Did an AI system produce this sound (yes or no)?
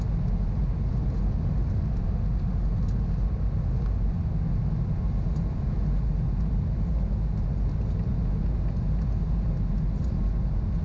no